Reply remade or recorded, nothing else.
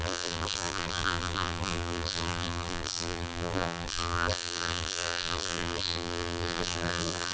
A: remade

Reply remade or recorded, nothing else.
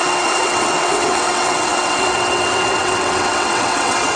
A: remade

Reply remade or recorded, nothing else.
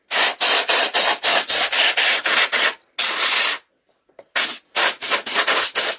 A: recorded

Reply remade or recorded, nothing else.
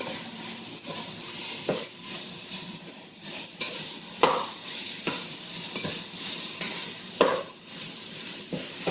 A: remade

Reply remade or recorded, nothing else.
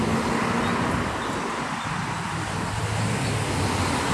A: recorded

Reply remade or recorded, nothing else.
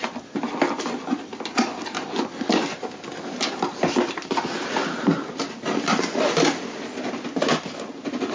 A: recorded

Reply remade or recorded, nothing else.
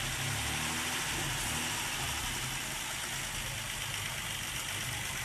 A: recorded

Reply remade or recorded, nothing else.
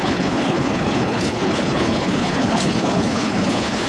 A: remade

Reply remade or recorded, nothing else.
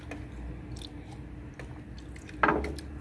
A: recorded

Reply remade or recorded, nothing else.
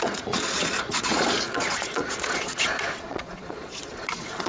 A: remade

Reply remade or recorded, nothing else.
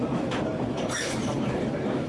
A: remade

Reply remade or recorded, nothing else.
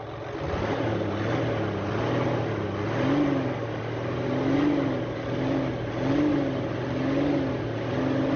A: recorded